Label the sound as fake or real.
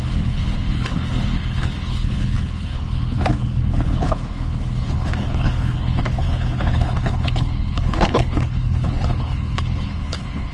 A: fake